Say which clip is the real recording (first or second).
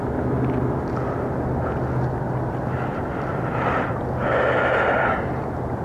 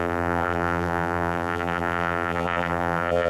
first